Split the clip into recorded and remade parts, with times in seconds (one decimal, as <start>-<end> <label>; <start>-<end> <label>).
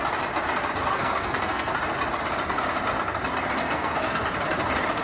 0.0-0.9 recorded; 0.9-1.7 remade; 1.7-3.6 recorded; 3.6-4.2 remade; 4.2-5.0 recorded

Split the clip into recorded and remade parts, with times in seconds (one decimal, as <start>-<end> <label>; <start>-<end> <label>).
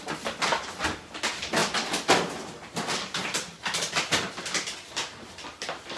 0.0-6.0 recorded